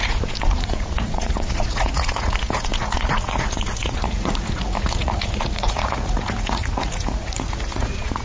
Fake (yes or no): yes